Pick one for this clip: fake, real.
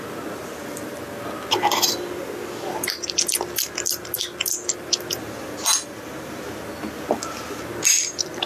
real